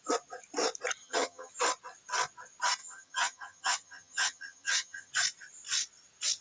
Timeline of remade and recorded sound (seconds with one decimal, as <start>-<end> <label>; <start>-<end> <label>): 0.0-1.0 recorded; 1.0-1.5 remade; 1.5-2.8 recorded; 2.8-5.1 remade; 5.1-6.4 recorded